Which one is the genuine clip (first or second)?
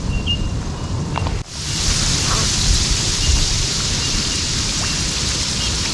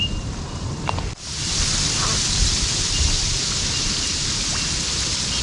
first